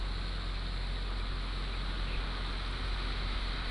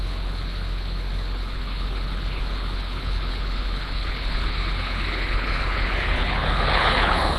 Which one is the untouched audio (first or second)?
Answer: first